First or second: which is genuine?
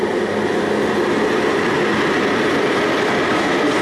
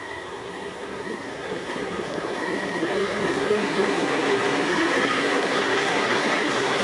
first